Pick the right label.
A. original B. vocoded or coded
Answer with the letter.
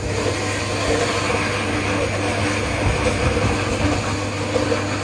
A